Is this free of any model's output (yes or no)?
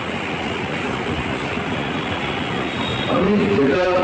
no